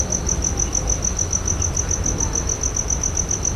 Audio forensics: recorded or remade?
recorded